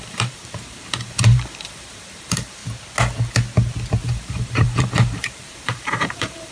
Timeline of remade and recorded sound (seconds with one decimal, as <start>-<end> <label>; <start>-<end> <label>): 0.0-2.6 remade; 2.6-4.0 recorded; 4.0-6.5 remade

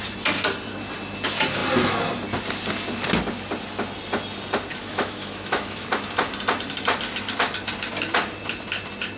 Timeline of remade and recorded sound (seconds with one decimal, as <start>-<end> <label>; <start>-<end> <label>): 0.0-4.8 recorded; 4.8-5.9 remade; 5.9-9.2 recorded

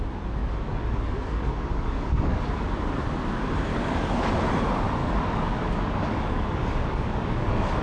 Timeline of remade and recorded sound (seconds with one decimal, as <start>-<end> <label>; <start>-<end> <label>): 0.0-0.4 recorded; 0.4-2.5 remade; 2.5-3.7 recorded; 3.7-4.3 remade; 4.3-5.0 recorded; 5.0-7.8 remade